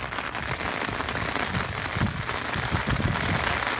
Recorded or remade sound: recorded